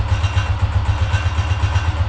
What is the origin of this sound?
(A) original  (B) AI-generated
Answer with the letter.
A